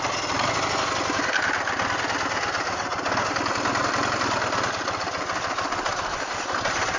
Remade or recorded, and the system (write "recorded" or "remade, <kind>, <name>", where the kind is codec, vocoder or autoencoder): recorded